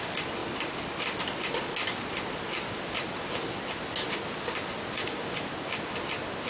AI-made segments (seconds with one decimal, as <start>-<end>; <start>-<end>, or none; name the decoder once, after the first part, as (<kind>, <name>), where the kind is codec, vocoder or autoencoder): none